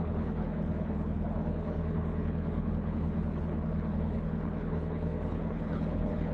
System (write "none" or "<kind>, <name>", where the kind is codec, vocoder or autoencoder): codec, HILCodec